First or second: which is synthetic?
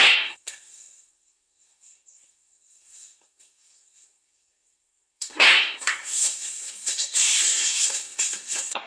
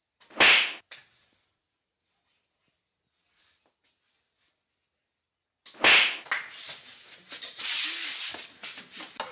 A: first